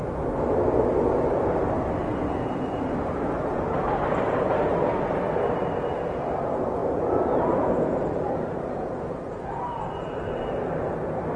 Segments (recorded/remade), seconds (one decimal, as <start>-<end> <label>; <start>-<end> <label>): 0.0-6.8 recorded; 6.8-10.2 remade; 10.2-11.4 recorded